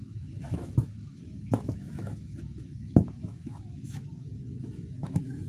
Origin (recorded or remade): remade